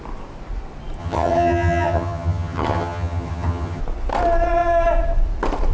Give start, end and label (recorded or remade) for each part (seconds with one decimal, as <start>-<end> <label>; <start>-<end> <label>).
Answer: 0.0-1.0 recorded; 1.0-3.8 remade; 3.8-5.7 recorded